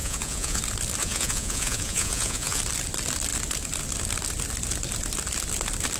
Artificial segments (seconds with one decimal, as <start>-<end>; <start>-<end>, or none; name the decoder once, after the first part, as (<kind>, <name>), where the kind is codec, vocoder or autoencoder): 0.0-0.6 (vocoder, Vocos); 1.0-2.6